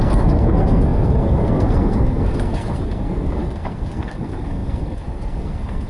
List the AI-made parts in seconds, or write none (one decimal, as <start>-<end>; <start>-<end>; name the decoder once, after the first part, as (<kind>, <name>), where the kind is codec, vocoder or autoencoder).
0.0-5.9 (codec, SNAC)